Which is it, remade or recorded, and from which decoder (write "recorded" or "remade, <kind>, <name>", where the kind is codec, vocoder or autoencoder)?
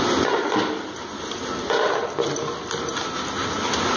recorded